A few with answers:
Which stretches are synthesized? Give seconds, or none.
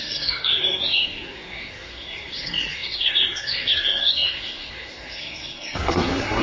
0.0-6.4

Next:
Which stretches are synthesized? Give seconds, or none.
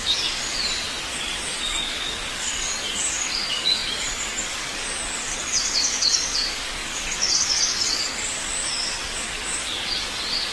0.0-0.4; 1.1-10.5